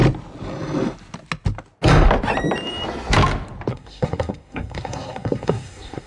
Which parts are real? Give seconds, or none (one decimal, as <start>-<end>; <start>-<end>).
0.0-3.7